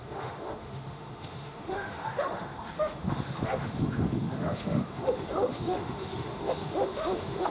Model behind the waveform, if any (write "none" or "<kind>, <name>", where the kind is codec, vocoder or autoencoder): autoencoder, DAC-VAE